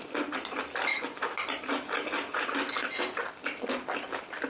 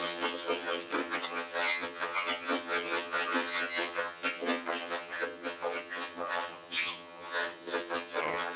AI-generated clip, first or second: second